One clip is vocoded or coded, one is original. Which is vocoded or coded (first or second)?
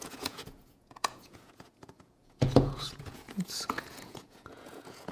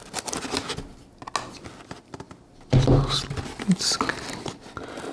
first